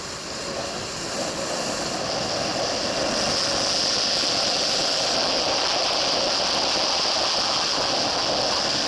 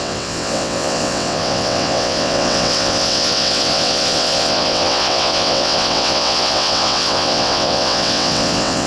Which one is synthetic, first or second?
second